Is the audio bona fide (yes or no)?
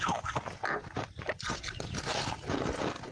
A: yes